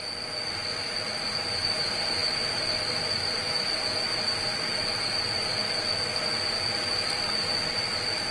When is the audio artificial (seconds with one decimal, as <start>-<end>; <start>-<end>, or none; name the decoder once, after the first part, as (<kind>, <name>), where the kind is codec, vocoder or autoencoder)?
none